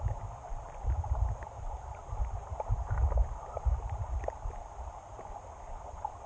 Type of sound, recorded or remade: recorded